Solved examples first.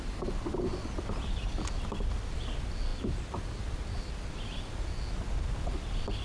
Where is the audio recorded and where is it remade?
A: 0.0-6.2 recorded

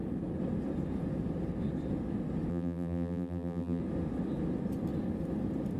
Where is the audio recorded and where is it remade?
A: 0.0-2.5 recorded; 2.5-3.8 remade; 3.8-5.8 recorded

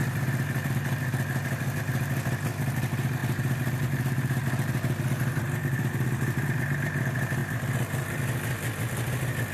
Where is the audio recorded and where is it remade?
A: 0.0-0.7 remade; 0.7-3.2 recorded; 3.2-7.0 remade; 7.0-7.4 recorded; 7.4-8.2 remade; 8.2-9.5 recorded